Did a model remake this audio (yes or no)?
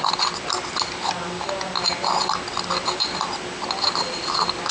no